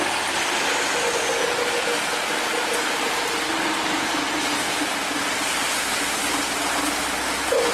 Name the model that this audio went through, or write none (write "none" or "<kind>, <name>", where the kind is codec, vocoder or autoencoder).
none